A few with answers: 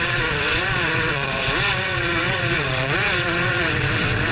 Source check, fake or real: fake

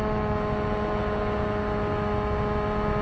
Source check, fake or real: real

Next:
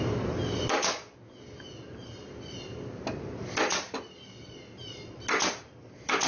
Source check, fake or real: real